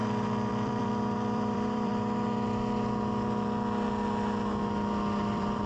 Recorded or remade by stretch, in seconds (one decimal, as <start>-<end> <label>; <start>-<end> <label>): 0.0-1.9 remade; 1.9-5.3 recorded; 5.3-5.7 remade